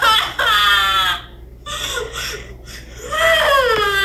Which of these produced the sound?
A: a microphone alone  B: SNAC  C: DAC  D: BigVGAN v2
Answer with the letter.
A